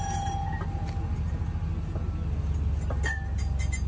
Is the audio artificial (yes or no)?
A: no